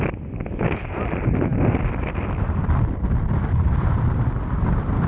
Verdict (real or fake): fake